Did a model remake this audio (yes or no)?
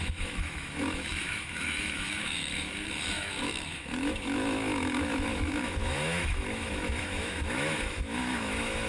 yes